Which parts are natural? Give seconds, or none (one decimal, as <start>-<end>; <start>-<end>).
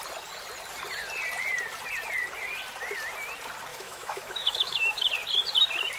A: 0.0-3.7; 5.1-6.0